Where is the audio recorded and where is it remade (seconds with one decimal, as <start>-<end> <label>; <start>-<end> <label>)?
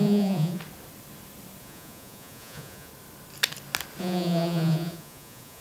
0.0-0.6 remade; 0.6-1.6 recorded; 1.6-2.9 remade; 2.9-4.0 recorded; 4.0-5.6 remade